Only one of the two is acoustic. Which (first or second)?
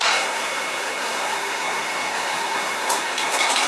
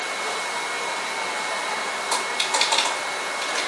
second